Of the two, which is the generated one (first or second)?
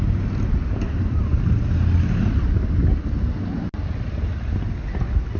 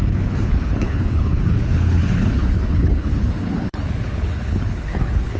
second